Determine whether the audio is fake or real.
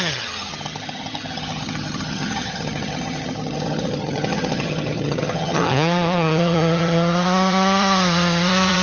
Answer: fake